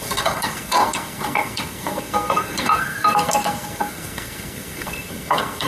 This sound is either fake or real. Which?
fake